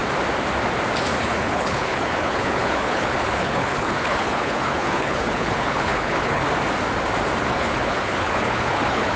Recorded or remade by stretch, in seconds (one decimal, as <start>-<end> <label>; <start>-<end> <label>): 0.0-1.2 recorded; 1.2-6.4 remade; 6.4-7.4 recorded; 7.4-9.2 remade